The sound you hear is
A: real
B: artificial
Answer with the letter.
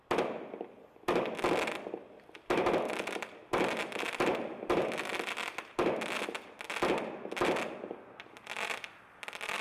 A